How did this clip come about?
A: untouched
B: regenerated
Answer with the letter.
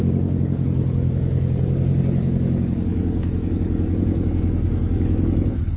B